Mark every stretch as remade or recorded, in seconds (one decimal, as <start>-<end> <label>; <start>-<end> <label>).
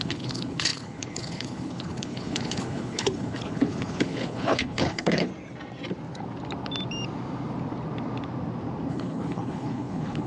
0.0-5.3 remade; 5.3-8.9 recorded; 8.9-10.3 remade